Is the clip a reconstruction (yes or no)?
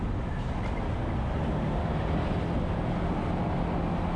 no